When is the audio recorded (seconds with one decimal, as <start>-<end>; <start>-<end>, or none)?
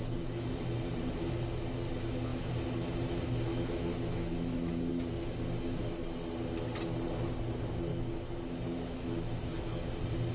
0.0-3.5; 4.9-7.9; 9.3-10.3